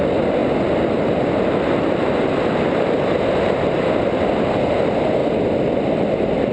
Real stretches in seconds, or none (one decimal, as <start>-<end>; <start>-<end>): 0.0-6.5